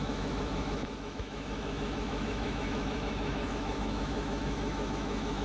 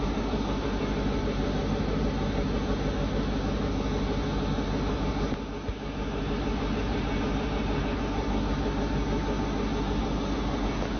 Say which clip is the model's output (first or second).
first